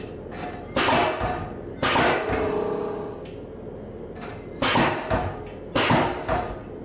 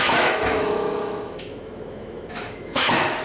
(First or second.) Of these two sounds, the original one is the first